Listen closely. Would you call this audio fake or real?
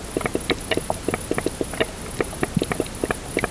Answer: real